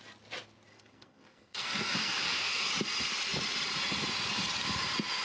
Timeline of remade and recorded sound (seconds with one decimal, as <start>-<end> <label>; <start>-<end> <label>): 0.0-0.7 recorded; 0.7-2.7 remade; 2.7-5.2 recorded